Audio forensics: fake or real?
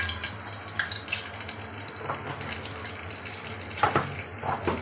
real